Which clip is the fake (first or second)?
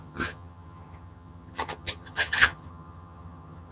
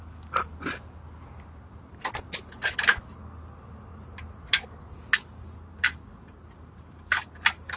first